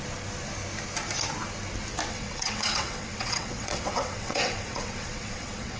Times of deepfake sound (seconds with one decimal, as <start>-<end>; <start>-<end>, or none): 2.1-5.8